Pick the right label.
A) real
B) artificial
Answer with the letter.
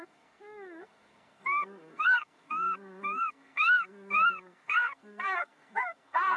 B